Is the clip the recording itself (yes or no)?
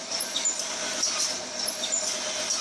yes